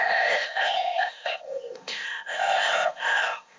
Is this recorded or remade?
remade